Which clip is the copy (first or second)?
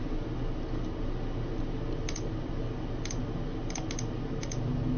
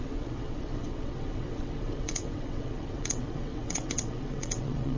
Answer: second